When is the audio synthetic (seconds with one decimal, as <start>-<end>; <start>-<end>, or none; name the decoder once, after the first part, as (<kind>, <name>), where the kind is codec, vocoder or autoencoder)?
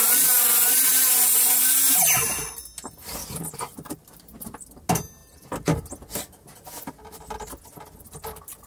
3.2-4.5 (vocoder, BigVGAN v2)